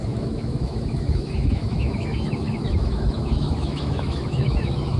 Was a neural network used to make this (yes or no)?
yes